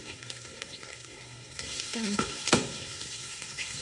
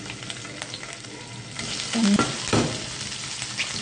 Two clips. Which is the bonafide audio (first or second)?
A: second